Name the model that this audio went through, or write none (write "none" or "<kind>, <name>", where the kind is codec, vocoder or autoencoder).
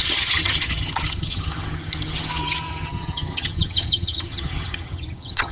vocoder, HiFi-GAN